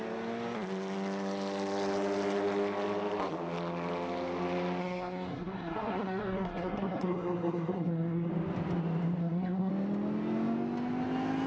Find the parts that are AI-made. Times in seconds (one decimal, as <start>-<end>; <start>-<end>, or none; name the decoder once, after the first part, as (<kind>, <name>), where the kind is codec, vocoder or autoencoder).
4.8-8.3 (codec, SNAC); 9.2-9.7